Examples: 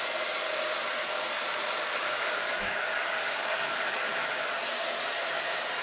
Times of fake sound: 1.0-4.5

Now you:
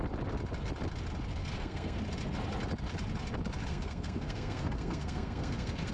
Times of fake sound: 1.4-2.0; 3.7-5.9

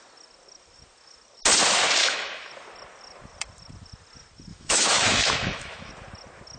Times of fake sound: 2.0-2.5; 4.5-5.9